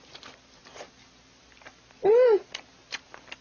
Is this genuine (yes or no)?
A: yes